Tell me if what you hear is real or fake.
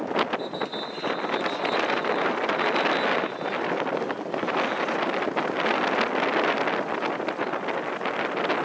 real